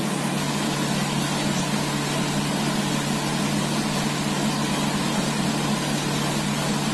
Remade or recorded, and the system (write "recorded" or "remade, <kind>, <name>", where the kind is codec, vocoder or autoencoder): recorded